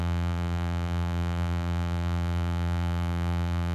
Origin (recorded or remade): remade